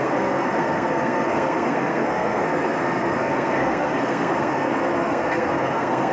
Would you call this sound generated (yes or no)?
yes